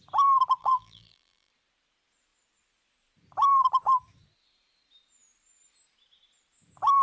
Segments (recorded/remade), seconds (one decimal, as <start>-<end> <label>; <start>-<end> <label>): 0.0-0.6 recorded; 0.6-1.5 remade; 1.5-7.0 recorded